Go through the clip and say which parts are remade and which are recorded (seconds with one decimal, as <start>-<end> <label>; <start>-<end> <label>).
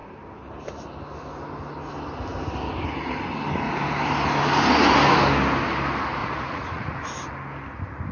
0.0-6.2 recorded; 6.2-7.1 remade; 7.1-8.1 recorded